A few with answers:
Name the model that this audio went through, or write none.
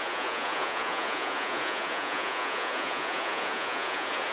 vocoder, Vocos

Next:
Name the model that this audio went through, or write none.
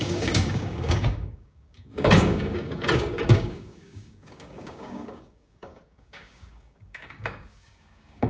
codec, DAC